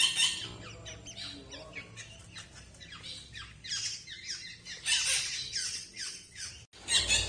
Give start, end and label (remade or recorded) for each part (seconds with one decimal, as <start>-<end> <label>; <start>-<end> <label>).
0.0-5.6 recorded; 5.6-6.5 remade; 6.5-7.3 recorded